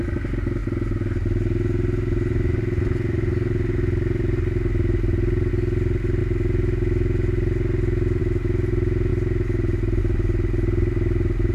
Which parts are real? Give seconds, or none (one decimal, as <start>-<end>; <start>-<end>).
0.0-11.5

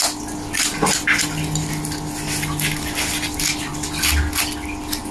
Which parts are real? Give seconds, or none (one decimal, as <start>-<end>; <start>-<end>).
0.0-5.1

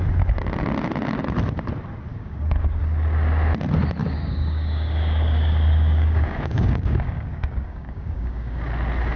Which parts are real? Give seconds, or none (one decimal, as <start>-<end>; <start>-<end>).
0.0-2.1; 2.8-4.0; 8.6-9.2

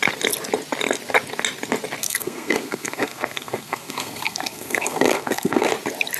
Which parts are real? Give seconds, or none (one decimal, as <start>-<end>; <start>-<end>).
0.0-2.0; 5.7-6.2

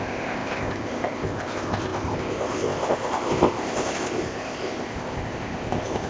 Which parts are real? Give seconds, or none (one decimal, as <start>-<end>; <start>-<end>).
none

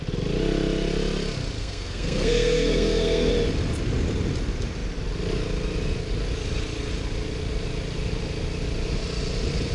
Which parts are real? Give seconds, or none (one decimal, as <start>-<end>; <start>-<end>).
0.0-1.6; 3.3-9.7

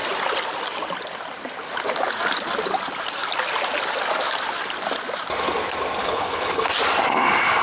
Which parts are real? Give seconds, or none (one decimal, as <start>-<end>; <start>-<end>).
0.0-6.0; 6.6-7.6

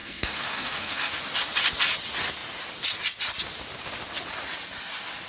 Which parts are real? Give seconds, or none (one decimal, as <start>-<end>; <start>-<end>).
1.2-5.3